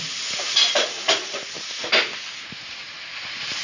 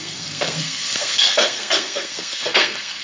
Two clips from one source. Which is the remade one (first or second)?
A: second